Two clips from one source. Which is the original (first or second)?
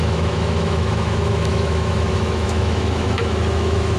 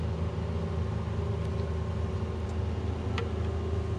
second